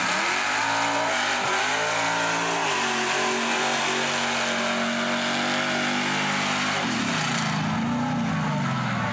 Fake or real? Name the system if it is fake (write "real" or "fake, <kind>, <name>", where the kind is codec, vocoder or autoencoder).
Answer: real